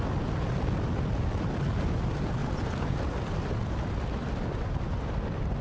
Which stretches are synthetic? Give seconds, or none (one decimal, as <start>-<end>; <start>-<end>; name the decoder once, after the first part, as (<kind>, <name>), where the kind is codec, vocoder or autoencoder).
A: none